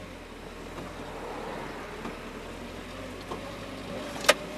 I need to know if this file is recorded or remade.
recorded